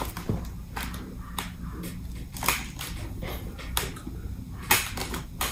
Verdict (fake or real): real